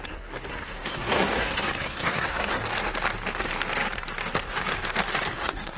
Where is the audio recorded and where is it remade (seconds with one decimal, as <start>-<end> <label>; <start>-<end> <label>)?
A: 0.0-2.6 remade; 2.6-5.3 recorded; 5.3-5.8 remade